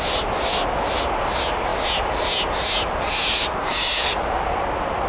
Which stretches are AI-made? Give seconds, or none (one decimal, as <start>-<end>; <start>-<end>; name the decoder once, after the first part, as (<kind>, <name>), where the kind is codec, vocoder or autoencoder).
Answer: none